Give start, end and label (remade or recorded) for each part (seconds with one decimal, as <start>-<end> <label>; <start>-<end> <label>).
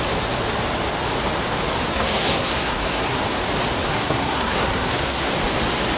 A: 0.0-1.9 recorded; 1.9-3.2 remade; 3.2-3.9 recorded; 3.9-5.3 remade; 5.3-6.0 recorded